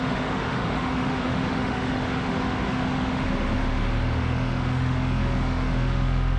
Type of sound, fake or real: fake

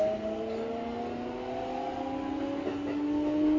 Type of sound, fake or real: real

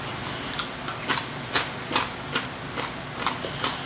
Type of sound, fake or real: real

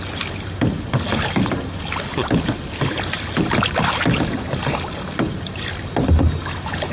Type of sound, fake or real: real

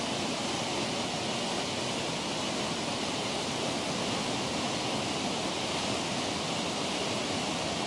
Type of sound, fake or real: real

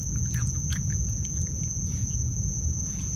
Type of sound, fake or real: fake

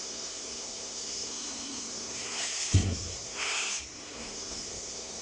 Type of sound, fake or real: fake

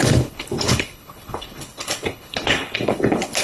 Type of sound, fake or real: fake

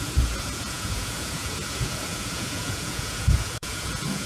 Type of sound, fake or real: fake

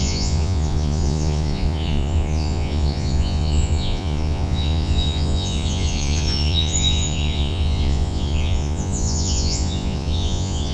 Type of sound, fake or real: fake